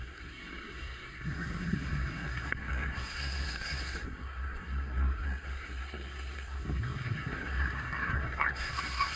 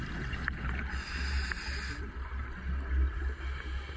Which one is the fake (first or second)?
first